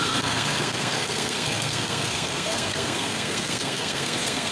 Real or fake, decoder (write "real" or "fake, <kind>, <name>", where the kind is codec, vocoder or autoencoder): fake, codec, SNAC